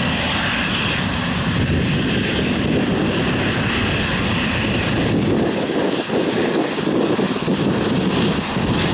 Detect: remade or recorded recorded